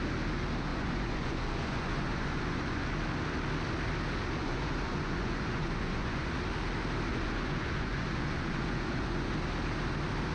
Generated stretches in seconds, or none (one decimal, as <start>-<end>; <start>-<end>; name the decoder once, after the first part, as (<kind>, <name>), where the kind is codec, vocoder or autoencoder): 0.7-2.9 (vocoder, Vocos); 4.4-6.3; 7.1-9.3